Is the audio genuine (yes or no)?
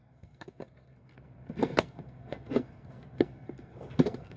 no